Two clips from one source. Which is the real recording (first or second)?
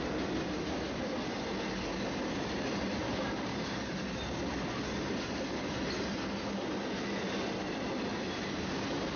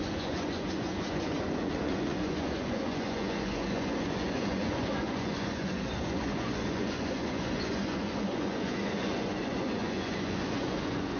first